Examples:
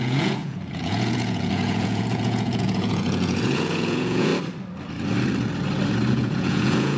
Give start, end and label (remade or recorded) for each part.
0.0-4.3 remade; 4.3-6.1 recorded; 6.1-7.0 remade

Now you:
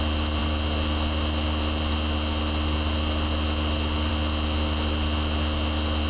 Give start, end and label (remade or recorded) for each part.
0.0-6.1 recorded

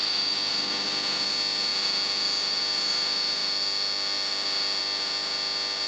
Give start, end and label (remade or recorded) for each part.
0.0-5.9 recorded

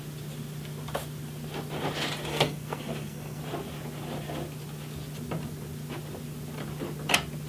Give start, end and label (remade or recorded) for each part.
0.0-2.3 recorded; 2.3-3.4 remade; 3.4-7.5 recorded

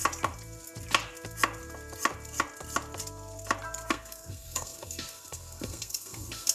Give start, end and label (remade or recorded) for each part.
0.0-3.9 recorded; 3.9-6.5 remade

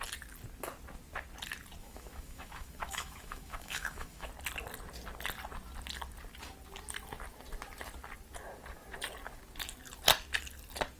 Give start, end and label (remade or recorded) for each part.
0.0-1.8 recorded; 1.8-4.3 remade; 4.3-11.0 recorded

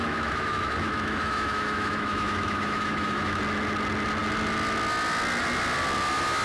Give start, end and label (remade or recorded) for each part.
0.0-3.4 remade; 3.4-6.4 recorded